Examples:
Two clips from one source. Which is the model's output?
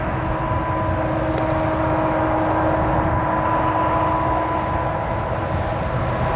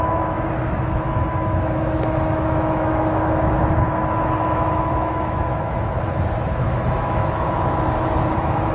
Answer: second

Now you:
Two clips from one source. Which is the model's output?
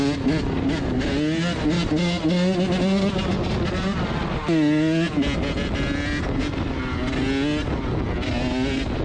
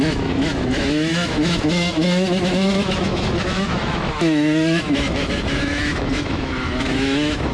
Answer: second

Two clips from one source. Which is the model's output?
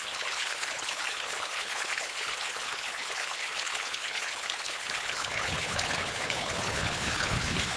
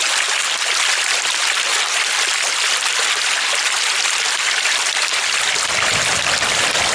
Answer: first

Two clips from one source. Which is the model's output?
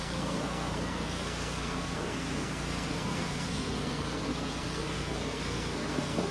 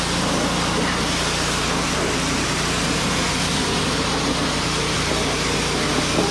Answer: first